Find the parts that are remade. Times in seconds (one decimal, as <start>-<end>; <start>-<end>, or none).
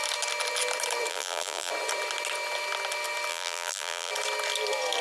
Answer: 1.1-1.7; 3.3-4.1